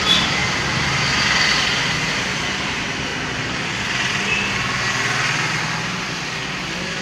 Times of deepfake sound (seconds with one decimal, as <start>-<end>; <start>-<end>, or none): 0.0-3.1; 6.6-7.0